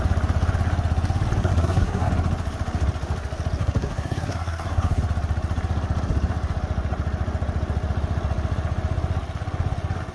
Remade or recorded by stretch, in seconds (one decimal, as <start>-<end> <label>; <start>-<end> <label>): 0.0-1.4 recorded; 1.4-2.1 remade; 2.1-3.6 recorded; 3.6-5.0 remade; 5.0-10.1 recorded